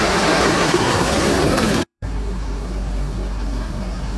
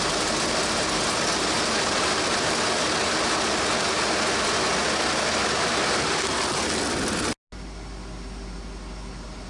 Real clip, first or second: second